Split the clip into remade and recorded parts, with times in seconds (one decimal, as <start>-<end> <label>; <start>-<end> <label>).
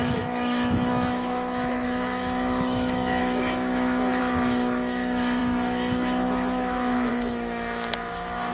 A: 0.0-8.5 remade